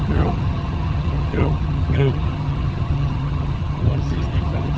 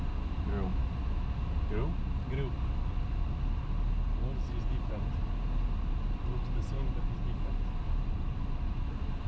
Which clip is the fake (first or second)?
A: first